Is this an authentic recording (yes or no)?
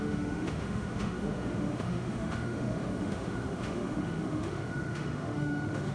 no